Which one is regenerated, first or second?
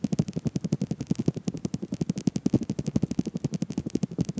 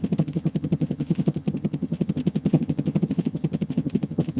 second